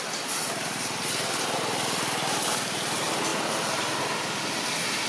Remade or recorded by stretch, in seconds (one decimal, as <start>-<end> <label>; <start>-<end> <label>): 0.0-5.1 recorded